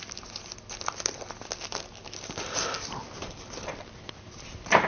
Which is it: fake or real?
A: real